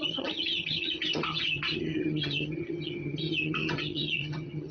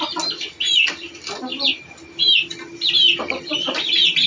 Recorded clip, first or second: second